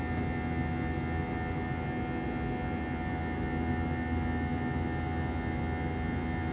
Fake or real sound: real